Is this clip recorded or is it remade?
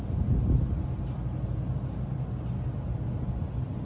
recorded